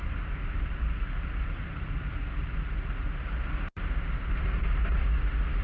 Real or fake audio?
real